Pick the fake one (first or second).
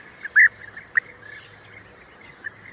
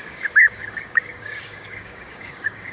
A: second